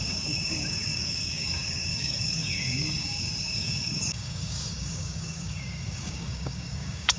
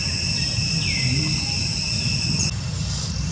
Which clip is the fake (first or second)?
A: first